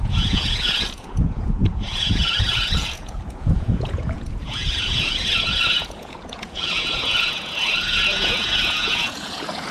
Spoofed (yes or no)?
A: yes